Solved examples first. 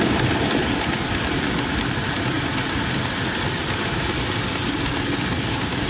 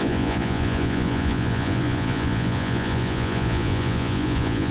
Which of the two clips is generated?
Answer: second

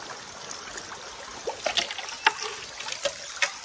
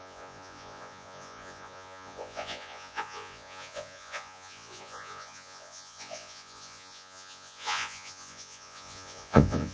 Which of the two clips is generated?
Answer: second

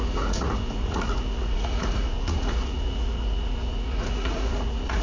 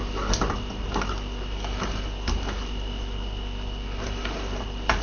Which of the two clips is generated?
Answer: first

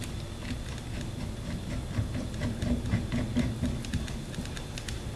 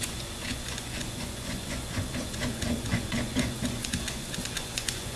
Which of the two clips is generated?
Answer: second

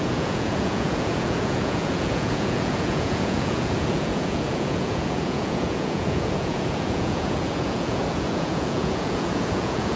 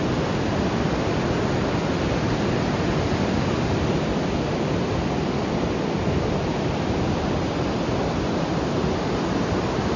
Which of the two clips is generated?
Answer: first